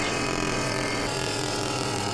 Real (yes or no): no